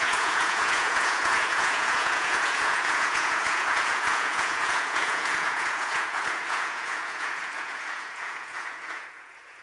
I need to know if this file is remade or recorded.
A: remade